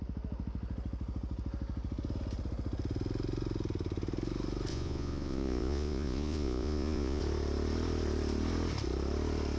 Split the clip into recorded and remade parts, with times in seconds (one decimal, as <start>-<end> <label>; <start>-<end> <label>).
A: 0.0-4.7 recorded; 4.7-7.2 remade; 7.2-9.6 recorded